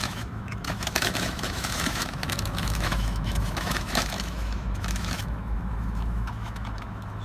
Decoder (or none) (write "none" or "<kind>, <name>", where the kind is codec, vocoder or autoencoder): autoencoder, DAC-VAE